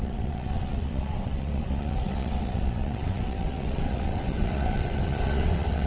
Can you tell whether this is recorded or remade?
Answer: remade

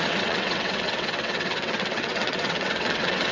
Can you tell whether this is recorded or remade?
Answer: remade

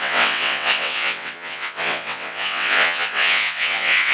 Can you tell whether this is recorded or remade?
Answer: remade